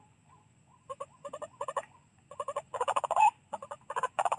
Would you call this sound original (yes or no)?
no